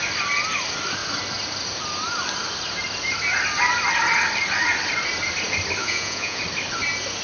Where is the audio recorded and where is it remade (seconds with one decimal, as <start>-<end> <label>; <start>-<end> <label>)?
0.0-5.8 recorded; 5.8-6.4 remade; 6.4-7.2 recorded